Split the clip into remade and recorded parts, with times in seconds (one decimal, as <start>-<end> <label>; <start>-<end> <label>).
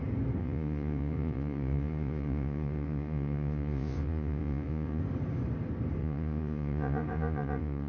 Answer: 0.0-0.4 recorded; 0.4-5.0 remade; 5.0-6.0 recorded; 6.0-7.9 remade